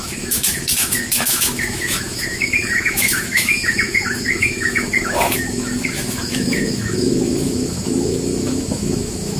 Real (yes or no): no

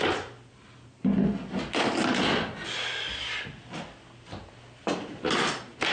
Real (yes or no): yes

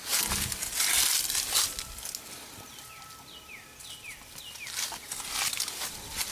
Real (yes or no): yes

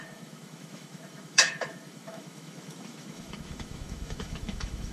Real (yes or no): no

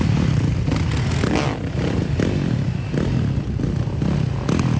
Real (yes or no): yes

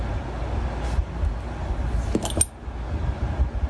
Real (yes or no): yes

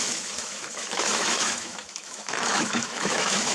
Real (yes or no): no